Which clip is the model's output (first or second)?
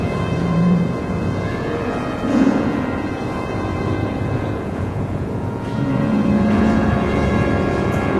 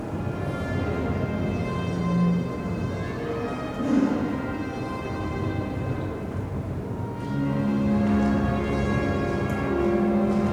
first